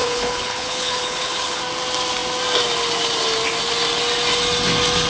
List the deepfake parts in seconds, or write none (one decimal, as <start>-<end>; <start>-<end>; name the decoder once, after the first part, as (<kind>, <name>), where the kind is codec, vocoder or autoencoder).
0.0-1.6 (codec, HILCodec)